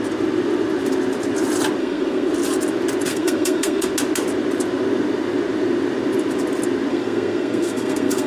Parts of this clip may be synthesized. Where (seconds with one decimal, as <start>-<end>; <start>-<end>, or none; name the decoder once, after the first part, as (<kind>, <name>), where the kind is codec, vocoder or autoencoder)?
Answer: 1.8-2.3 (codec, SNAC); 3.1-3.9; 6.9-8.3